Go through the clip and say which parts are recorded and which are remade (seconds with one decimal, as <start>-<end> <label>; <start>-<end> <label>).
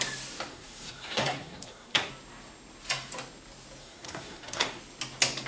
0.0-0.5 recorded; 0.5-2.1 remade; 2.1-3.8 recorded; 3.8-4.8 remade; 4.8-5.5 recorded